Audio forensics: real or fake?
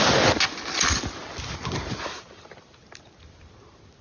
real